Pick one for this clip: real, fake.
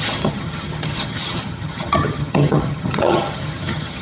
fake